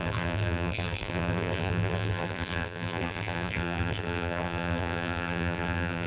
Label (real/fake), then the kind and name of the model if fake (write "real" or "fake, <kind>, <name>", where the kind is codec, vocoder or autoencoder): fake, vocoder, BigVGAN v2